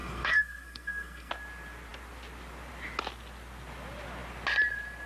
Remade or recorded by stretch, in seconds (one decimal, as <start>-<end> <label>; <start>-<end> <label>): 0.0-1.3 remade; 1.3-5.1 recorded